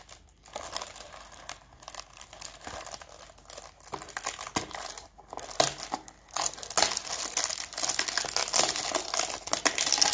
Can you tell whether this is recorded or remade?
recorded